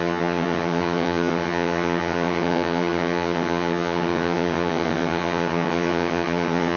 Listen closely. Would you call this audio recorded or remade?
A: remade